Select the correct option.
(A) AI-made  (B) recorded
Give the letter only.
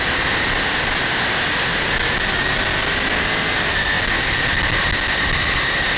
B